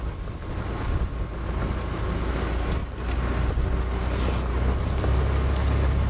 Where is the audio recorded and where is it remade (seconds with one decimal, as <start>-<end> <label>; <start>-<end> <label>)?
0.0-6.1 recorded